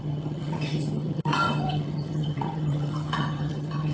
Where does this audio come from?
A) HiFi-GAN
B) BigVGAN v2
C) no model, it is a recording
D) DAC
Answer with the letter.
A